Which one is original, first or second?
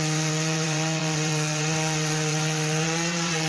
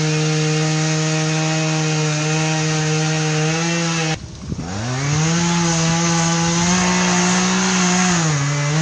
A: second